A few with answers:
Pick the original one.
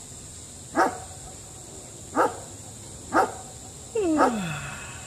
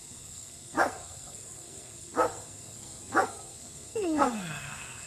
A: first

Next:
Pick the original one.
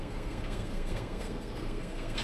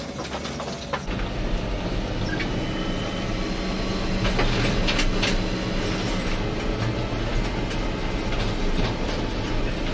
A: second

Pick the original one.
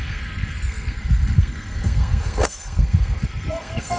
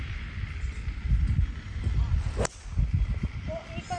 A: second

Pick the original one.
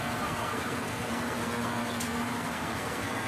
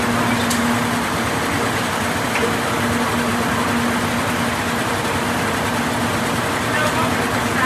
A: second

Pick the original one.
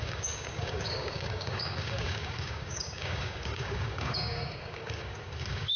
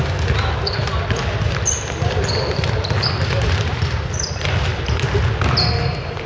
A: second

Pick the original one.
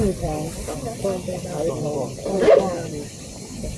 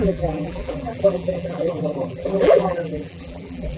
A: first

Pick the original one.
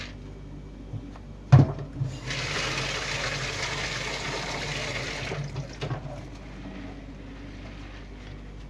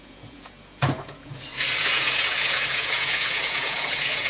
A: first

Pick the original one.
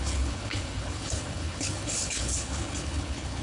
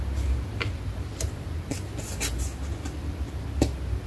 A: second